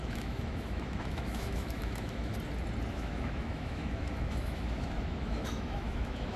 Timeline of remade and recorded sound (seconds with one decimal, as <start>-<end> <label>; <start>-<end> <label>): 0.0-2.3 remade; 2.3-2.9 recorded; 2.9-6.4 remade